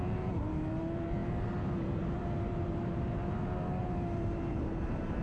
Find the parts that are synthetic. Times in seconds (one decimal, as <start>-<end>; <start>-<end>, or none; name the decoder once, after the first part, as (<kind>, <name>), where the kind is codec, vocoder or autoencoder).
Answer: 0.0-5.2 (vocoder, BigVGAN v2)